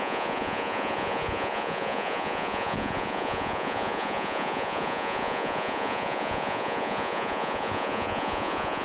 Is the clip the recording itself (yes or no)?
no